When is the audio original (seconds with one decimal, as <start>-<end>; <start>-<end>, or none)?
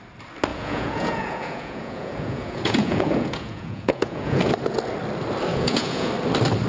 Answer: 0.0-0.5; 4.5-5.5; 6.1-6.7